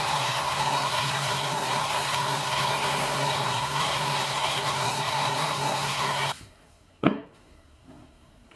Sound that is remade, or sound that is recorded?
remade